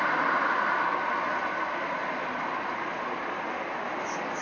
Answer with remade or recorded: recorded